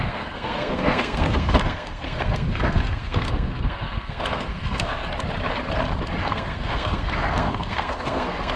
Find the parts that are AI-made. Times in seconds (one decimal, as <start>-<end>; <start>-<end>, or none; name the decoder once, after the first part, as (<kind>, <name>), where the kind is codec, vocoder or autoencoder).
0.0-5.0 (codec, SNAC); 6.2-8.6